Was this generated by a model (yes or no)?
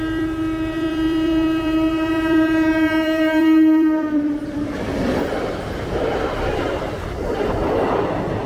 yes